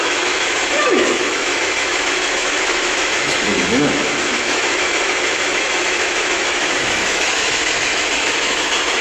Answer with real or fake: fake